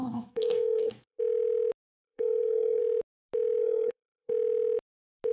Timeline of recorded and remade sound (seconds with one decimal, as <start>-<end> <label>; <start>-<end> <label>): 0.0-1.2 remade; 1.2-1.9 recorded; 1.9-2.8 remade; 2.8-3.6 recorded; 3.6-4.3 remade; 4.3-5.3 recorded